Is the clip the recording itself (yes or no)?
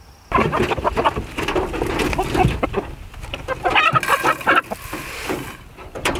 yes